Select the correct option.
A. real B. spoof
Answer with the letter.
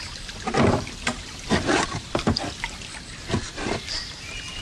B